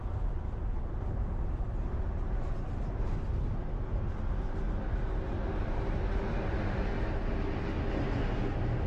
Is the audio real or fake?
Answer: real